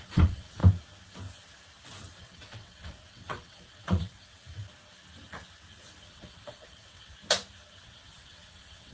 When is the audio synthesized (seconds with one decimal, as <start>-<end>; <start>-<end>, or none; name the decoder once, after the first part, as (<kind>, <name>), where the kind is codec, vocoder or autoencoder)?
0.0-0.6 (vocoder, WaveNeXt); 2.2-4.6; 6.1-7.2; 7.8-8.9